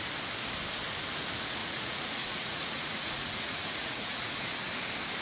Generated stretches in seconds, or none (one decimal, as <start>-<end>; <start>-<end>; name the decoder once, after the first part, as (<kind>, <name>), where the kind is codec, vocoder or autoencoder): 1.6-4.3 (vocoder, Vocos)